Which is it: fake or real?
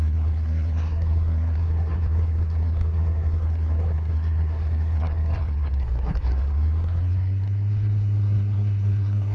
fake